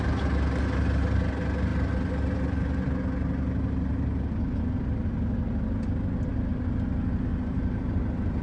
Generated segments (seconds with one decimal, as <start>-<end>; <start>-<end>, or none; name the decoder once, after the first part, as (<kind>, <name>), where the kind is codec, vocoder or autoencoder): 7.3-7.8 (vocoder, BigVGAN v2)